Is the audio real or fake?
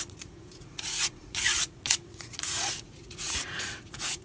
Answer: fake